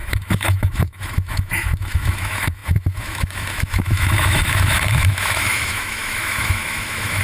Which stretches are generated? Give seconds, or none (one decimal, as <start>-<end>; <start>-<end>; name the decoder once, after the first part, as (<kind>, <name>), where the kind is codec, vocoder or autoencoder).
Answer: 0.0-7.2 (autoencoder, DAC-VAE)